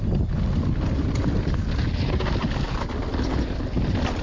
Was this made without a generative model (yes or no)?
yes